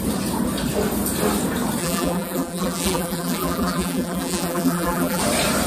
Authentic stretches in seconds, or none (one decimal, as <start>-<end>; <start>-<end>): 0.0-1.8; 5.2-5.7